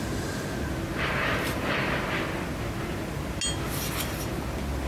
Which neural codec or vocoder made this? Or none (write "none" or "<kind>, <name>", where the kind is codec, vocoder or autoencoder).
none